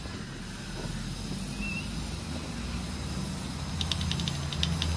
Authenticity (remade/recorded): recorded